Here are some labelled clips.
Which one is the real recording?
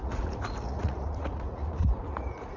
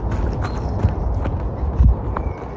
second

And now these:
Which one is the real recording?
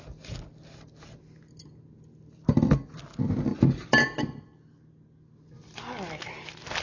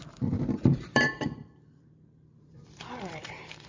first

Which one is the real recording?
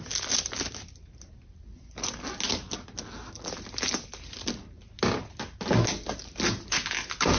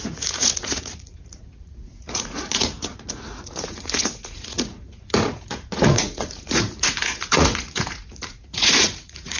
first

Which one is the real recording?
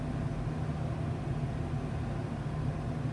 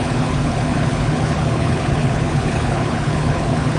first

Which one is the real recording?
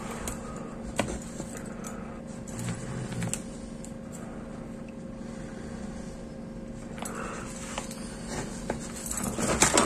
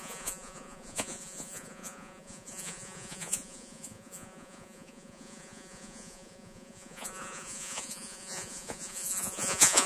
first